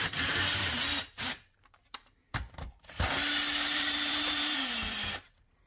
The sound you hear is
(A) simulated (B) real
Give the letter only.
A